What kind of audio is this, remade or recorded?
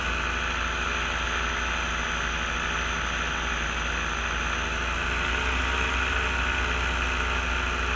recorded